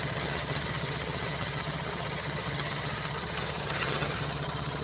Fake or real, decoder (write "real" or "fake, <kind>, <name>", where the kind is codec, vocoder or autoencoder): fake, vocoder, HiFi-GAN